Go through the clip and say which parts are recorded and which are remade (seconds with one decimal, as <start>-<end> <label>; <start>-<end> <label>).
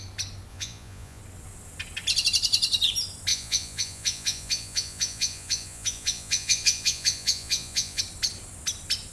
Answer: 0.0-0.5 recorded; 0.5-1.2 remade; 1.2-3.3 recorded; 3.3-8.0 remade; 8.0-9.1 recorded